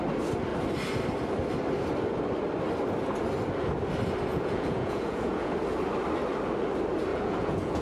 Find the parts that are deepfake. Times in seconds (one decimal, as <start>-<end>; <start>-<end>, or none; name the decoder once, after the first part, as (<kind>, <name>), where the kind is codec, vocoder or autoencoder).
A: 4.3-5.5 (vocoder, Vocos); 7.1-7.8